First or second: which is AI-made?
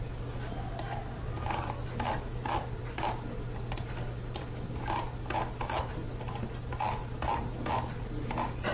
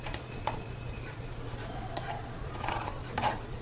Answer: second